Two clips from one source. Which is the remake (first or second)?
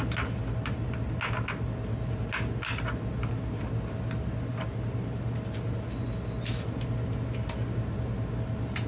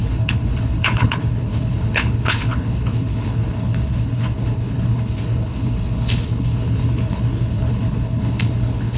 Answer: second